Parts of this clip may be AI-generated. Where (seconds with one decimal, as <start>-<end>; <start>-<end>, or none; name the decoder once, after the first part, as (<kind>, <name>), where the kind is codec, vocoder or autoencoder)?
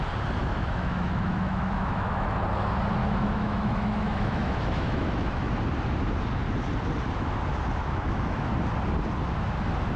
0.4-2.4 (autoencoder, DAC-VAE); 3.0-5.5; 7.8-8.5